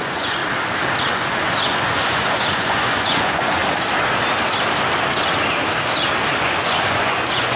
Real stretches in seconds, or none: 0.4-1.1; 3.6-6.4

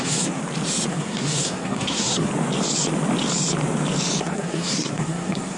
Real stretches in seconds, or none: 0.4-0.9; 2.3-4.2

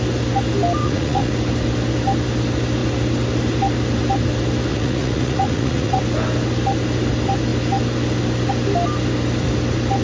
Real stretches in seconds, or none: 0.0-0.8; 1.3-4.7; 6.0-10.0